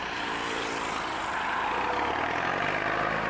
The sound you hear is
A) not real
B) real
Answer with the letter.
B